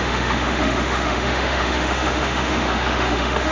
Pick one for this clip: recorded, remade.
remade